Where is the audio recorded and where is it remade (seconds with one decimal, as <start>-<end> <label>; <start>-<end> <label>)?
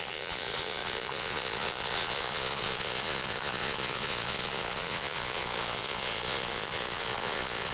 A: 0.0-7.7 remade